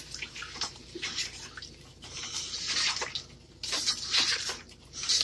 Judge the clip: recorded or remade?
recorded